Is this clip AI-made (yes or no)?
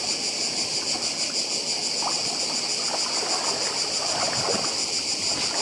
no